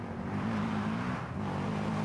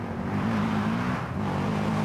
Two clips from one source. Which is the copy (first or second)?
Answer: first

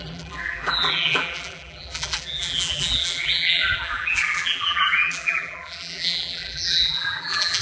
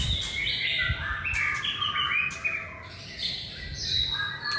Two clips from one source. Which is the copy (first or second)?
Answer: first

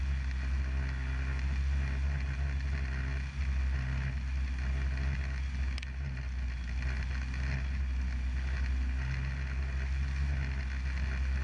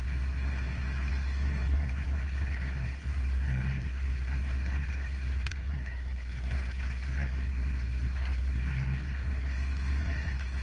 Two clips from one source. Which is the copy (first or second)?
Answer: second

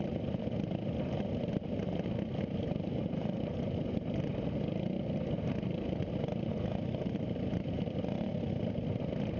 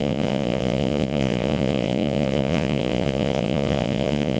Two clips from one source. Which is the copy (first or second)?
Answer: second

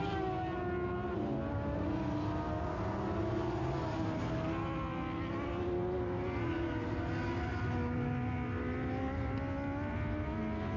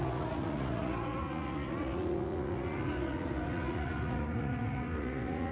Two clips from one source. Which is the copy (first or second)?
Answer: second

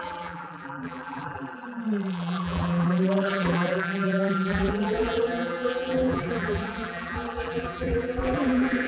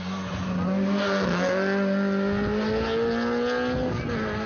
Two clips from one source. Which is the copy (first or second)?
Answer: first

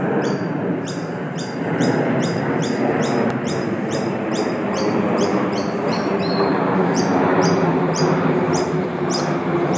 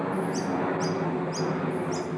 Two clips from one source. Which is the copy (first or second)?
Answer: first